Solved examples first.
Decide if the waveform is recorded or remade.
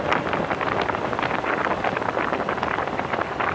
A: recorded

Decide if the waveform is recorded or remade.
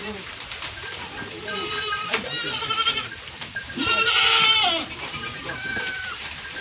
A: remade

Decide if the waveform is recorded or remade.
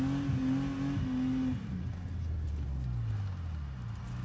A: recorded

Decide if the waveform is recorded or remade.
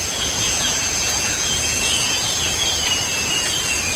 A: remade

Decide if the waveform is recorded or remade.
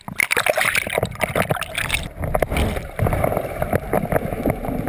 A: recorded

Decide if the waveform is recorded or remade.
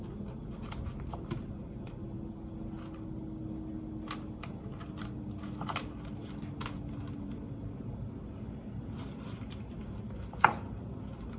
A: recorded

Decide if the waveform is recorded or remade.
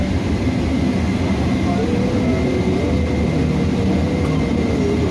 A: recorded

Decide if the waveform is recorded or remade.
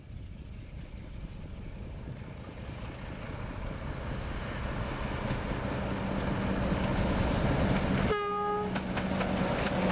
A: recorded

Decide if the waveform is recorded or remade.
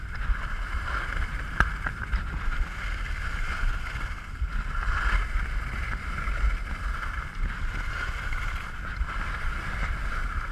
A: recorded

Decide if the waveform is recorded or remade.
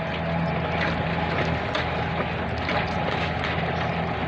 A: recorded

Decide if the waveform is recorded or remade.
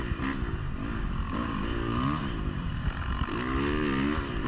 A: recorded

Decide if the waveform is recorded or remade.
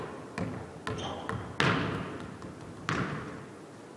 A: recorded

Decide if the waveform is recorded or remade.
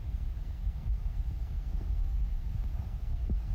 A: remade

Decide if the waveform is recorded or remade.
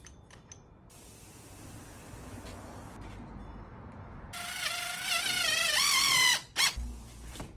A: recorded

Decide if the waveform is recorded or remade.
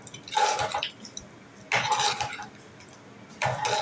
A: recorded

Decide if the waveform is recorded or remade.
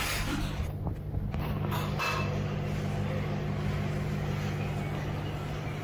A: recorded